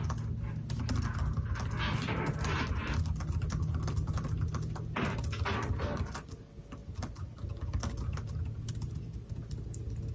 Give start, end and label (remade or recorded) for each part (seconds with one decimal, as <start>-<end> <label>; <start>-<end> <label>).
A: 0.0-10.1 recorded